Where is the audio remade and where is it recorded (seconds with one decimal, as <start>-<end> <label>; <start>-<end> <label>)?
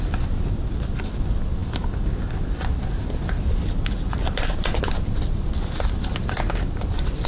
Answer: 0.0-7.3 recorded